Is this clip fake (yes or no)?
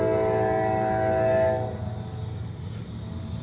no